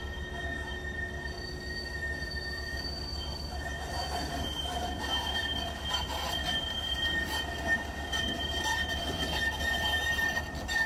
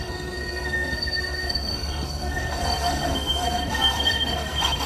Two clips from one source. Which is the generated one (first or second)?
second